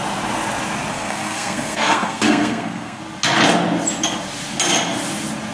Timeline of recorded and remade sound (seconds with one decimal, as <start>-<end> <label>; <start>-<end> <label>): 0.0-0.9 recorded; 0.9-3.0 remade; 3.0-5.5 recorded